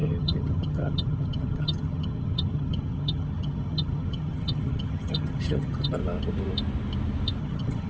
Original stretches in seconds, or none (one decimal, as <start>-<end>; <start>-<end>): 6.0-7.4